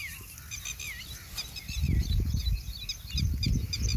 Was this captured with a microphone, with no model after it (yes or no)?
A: yes